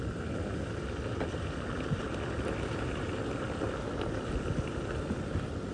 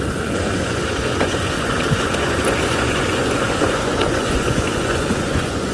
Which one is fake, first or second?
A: second